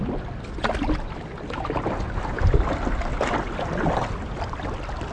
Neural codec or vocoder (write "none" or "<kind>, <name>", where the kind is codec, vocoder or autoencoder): none